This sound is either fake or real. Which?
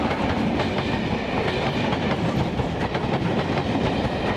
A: real